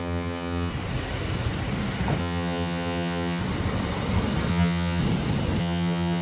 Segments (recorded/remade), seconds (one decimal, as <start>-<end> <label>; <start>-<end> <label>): 0.0-0.7 remade; 0.7-2.2 recorded; 2.2-3.4 remade; 3.4-4.5 recorded; 4.5-5.0 remade; 5.0-5.6 recorded; 5.6-6.2 remade